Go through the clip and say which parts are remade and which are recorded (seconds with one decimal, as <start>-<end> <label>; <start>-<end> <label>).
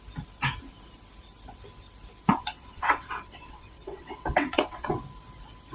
0.0-2.3 recorded; 2.3-4.9 remade; 4.9-5.7 recorded